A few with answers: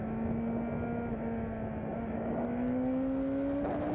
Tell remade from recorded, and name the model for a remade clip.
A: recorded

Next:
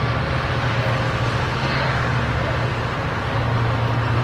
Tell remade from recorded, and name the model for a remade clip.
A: recorded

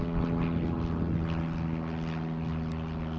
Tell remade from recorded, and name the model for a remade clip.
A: recorded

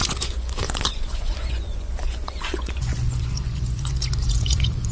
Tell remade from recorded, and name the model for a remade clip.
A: remade, vocoder, Vocos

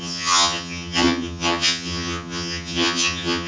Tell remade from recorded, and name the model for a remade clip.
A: remade, vocoder, HiFi-GAN